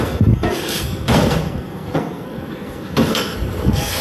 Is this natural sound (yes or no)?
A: no